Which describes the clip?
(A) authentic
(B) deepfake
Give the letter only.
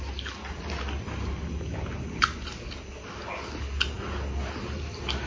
A